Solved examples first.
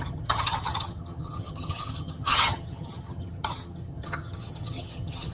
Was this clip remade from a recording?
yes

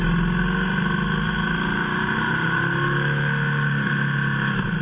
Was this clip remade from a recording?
no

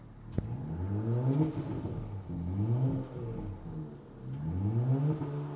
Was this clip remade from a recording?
no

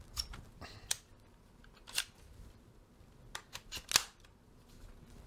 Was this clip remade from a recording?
no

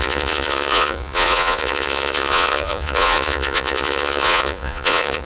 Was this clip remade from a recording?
yes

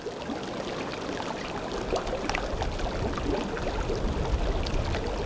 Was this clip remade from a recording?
no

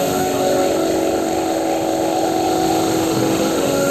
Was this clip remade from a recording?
yes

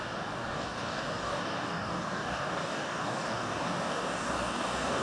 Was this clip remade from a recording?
yes